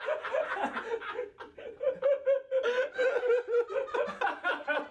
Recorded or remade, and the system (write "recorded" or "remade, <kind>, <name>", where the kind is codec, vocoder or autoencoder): recorded